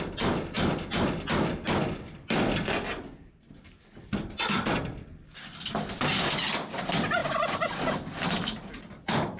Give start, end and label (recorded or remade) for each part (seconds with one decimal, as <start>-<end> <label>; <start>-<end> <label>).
0.0-9.4 recorded